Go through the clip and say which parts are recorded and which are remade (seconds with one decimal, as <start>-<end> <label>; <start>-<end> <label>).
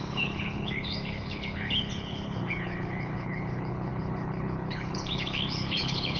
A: 0.0-6.2 remade